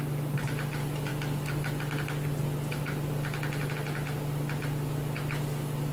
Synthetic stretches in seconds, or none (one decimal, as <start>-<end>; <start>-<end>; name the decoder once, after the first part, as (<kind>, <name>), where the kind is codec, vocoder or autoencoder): none